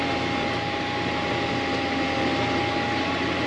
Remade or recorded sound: recorded